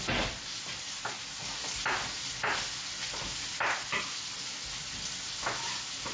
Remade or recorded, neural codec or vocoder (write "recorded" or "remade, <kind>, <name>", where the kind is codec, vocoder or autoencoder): recorded